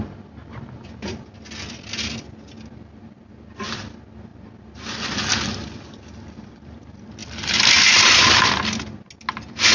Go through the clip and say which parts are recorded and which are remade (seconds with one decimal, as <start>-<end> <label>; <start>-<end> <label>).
0.0-9.7 recorded